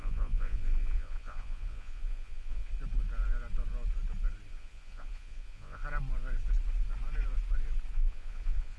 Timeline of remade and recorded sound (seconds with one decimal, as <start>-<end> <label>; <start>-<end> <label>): 0.0-2.7 remade; 2.7-4.5 recorded; 4.5-5.8 remade; 5.8-7.9 recorded; 7.9-8.8 remade